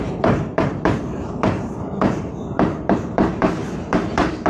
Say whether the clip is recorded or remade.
remade